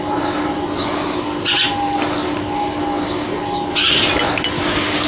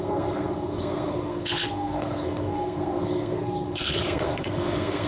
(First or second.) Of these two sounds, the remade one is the second